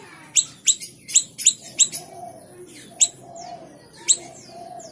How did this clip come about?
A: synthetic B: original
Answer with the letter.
B